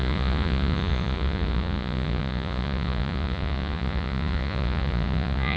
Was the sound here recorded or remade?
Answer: remade